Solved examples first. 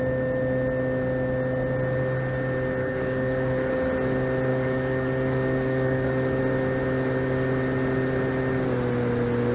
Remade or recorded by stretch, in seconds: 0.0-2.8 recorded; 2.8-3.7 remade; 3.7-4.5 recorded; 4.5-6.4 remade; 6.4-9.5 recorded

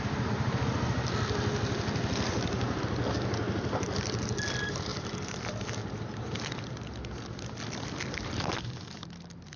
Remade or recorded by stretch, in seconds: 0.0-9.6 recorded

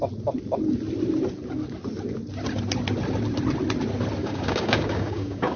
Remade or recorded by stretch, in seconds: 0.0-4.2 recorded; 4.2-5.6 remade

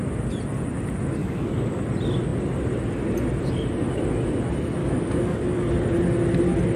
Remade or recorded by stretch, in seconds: 0.0-1.2 recorded; 1.2-1.8 remade; 1.8-4.8 recorded; 4.8-5.7 remade; 5.7-6.8 recorded

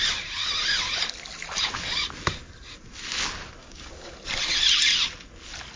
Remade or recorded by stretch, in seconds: 0.0-3.6 recorded; 3.6-4.1 remade; 4.1-5.8 recorded

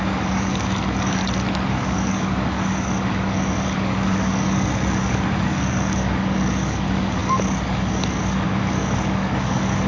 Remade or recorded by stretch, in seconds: 0.0-1.2 remade; 1.2-1.7 recorded; 1.7-9.9 remade

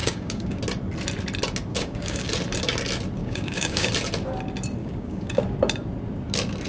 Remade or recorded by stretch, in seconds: 0.0-0.6 remade; 0.6-1.7 recorded; 1.7-2.3 remade; 2.3-3.2 recorded; 3.2-3.9 remade; 3.9-4.8 recorded; 4.8-5.4 remade; 5.4-6.7 recorded